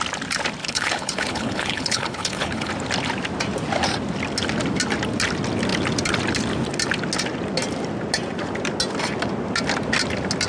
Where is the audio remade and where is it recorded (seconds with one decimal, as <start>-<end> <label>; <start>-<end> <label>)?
0.0-0.6 recorded; 0.6-2.7 remade; 2.7-10.5 recorded